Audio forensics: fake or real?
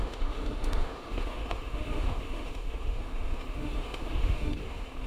fake